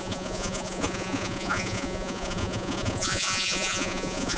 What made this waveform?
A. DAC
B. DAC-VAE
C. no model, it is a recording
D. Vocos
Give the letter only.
D